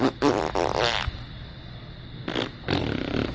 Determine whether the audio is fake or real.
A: real